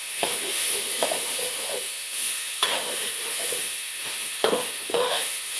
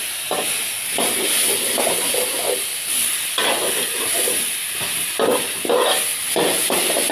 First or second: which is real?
second